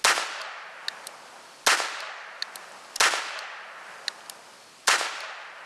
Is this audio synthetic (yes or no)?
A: no